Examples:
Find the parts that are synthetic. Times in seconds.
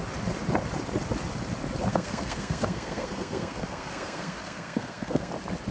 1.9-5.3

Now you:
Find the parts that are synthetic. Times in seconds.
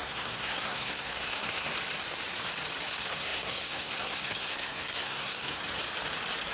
0.0-1.7; 2.9-5.6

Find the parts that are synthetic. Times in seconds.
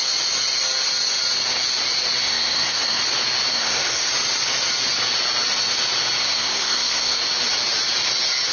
2.2-3.0; 3.5-4.1; 6.2-7.2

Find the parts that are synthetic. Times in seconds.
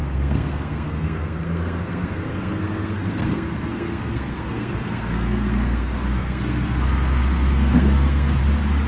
0.0-8.4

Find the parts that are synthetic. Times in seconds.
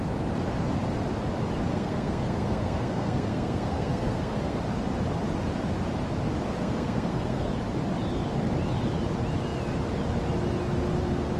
1.7-4.6; 6.6-7.5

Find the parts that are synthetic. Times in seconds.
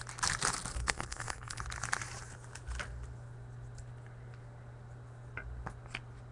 0.7-1.6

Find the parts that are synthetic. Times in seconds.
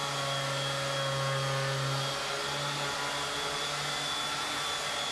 none